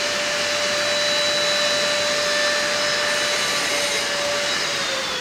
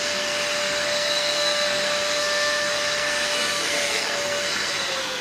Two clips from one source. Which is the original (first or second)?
first